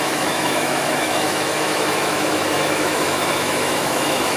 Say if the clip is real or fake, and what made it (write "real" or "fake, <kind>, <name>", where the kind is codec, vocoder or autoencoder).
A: fake, autoencoder, DAC-VAE